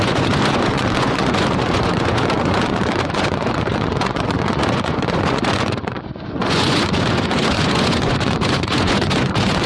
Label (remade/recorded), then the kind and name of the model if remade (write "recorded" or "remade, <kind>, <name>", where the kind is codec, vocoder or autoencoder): remade, vocoder, Vocos